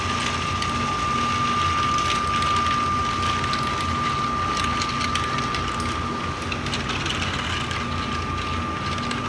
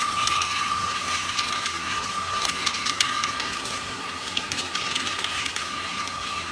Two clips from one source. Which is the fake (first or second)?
second